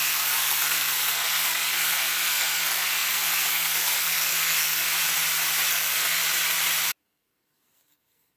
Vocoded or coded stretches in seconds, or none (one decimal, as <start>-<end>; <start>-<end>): 0.0-4.9; 5.7-6.2; 7.0-8.4